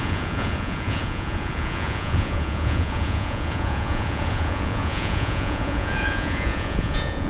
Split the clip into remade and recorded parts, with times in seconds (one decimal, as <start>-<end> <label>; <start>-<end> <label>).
0.0-7.3 remade